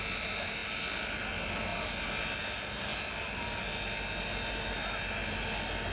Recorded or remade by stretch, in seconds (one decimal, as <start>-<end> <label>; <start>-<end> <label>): 0.0-5.9 recorded